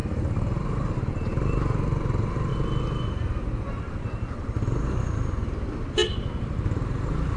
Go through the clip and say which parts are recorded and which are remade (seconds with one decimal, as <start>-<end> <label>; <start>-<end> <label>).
0.0-2.5 remade; 2.5-3.7 recorded; 3.7-5.4 remade; 5.4-6.4 recorded; 6.4-7.4 remade